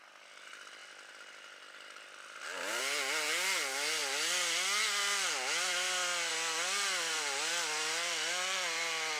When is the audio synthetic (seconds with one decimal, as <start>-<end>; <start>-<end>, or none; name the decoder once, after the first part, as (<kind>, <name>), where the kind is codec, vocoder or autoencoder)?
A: 0.8-2.8 (vocoder, BigVGAN v2); 4.0-5.7; 6.3-9.2